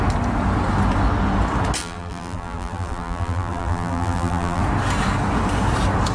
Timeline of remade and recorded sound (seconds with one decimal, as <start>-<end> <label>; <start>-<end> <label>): 0.0-1.8 recorded; 1.8-4.6 remade; 4.6-6.1 recorded